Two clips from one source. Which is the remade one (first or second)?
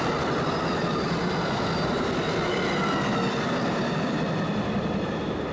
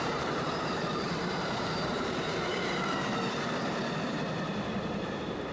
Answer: second